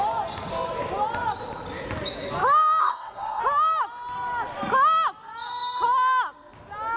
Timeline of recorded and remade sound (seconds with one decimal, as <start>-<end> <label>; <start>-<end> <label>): 0.0-2.8 recorded; 2.8-3.4 remade; 3.4-7.0 recorded